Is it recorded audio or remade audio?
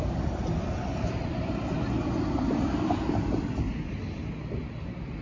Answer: recorded